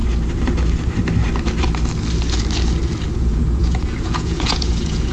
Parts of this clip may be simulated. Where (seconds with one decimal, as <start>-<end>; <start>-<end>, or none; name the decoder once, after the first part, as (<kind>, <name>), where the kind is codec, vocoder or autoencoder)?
3.1-5.1 (vocoder, Vocos)